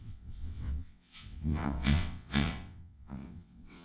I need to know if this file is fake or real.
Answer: fake